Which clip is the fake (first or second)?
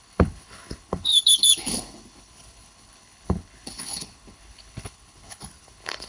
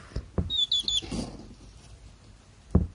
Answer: first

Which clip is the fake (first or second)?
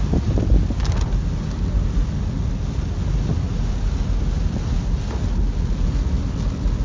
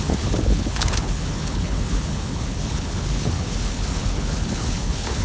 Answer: second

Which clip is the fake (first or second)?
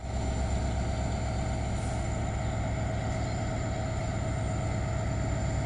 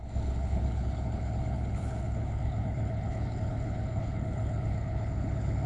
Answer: second